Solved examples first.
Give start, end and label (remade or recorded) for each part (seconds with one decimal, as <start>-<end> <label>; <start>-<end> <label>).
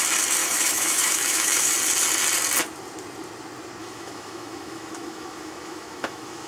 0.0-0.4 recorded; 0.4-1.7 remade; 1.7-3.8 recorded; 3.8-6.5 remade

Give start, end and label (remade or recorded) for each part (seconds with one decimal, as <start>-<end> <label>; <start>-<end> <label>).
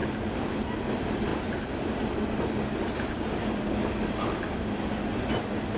0.0-5.8 recorded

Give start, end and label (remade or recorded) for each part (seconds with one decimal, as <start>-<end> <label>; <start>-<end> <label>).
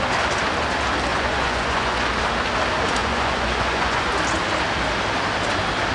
0.0-1.1 recorded; 1.1-2.1 remade; 2.1-3.0 recorded; 3.0-4.1 remade; 4.1-5.9 recorded